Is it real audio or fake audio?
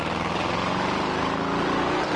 real